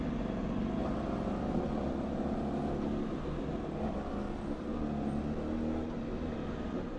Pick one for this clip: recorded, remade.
recorded